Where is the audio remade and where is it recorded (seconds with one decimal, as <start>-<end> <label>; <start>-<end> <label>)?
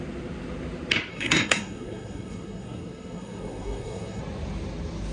0.0-1.1 recorded; 1.1-4.2 remade; 4.2-5.1 recorded